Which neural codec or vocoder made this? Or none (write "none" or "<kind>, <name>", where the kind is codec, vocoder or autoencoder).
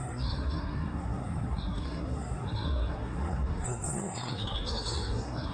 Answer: codec, SNAC